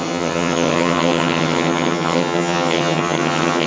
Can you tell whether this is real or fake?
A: fake